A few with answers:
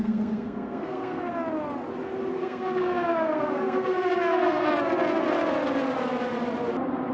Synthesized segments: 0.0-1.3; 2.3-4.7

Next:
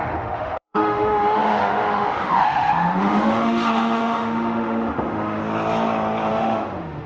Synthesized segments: 0.0-5.4; 6.3-7.1

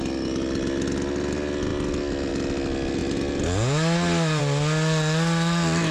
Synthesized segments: none

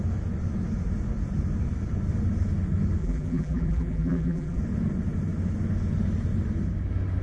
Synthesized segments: 3.0-4.6

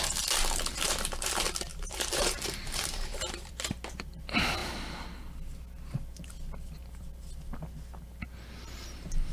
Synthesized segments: 1.7-3.5

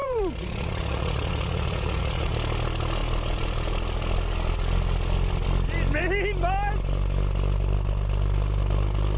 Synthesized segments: 0.0-2.3